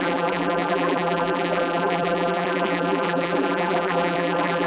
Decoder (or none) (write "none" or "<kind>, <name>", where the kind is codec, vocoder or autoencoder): vocoder, BigVGAN v2